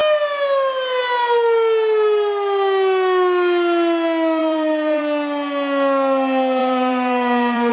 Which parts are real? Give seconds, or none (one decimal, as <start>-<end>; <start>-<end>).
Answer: 0.0-4.4; 5.0-6.6